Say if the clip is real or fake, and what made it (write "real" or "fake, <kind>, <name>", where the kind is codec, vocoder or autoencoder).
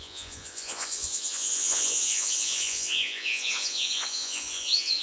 fake, vocoder, Vocos